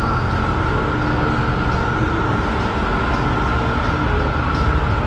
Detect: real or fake real